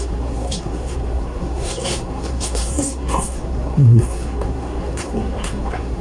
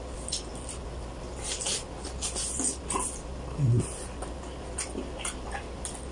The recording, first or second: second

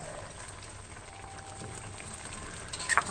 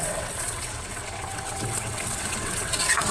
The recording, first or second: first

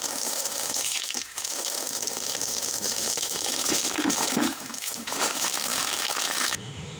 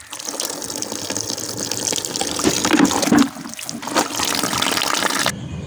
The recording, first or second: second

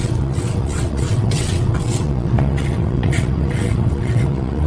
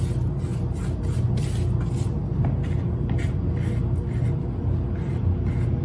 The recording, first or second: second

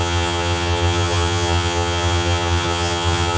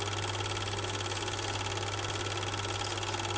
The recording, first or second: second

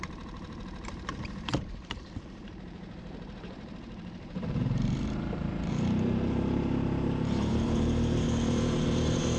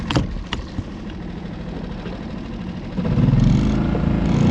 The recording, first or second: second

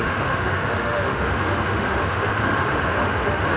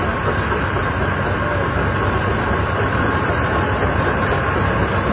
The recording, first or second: second